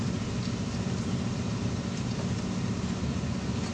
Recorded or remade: recorded